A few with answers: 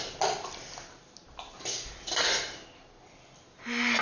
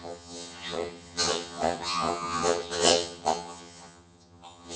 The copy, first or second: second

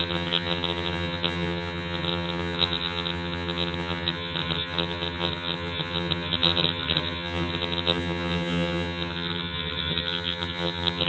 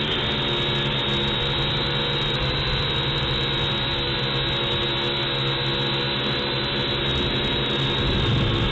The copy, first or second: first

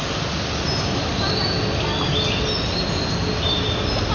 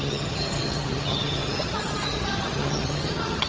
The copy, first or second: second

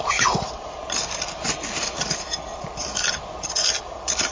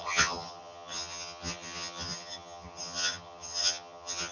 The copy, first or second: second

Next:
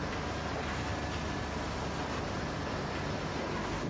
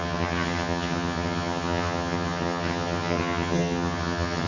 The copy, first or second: second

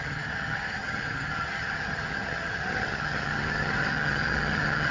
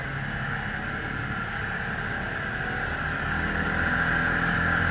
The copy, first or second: first